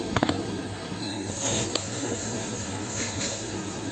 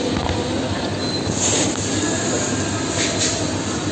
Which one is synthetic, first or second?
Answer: first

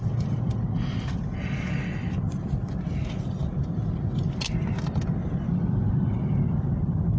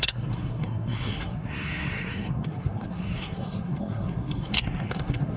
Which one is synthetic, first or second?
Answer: second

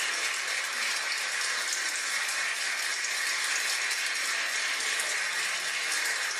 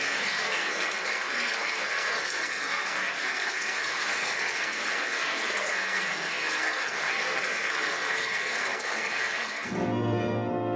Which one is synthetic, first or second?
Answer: second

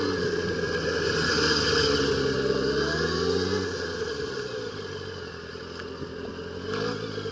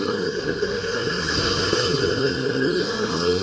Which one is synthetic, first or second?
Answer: second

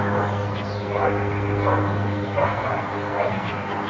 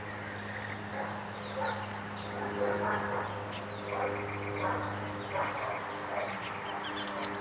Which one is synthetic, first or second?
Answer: first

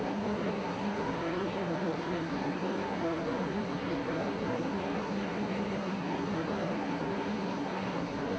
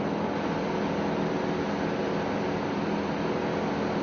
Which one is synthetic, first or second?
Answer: first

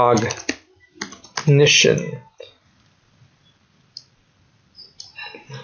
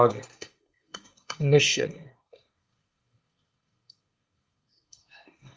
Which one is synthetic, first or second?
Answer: second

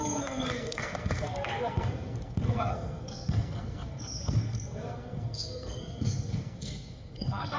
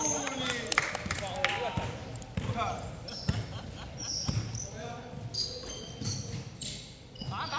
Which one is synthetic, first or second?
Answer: first